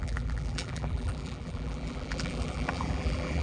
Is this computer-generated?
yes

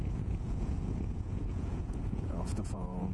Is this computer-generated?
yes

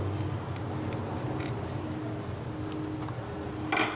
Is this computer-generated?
no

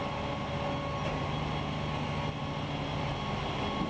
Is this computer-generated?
no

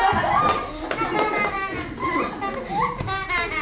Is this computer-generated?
no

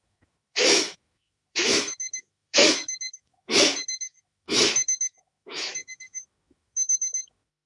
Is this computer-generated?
yes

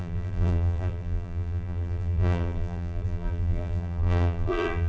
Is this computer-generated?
yes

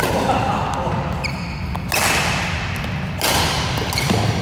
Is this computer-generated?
no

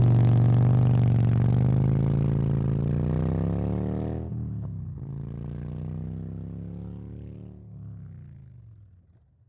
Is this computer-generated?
no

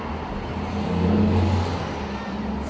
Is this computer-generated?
no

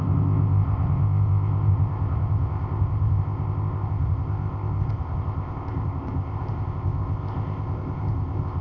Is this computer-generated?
yes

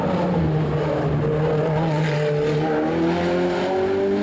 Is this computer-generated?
no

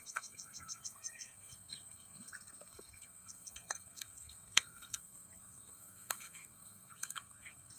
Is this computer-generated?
yes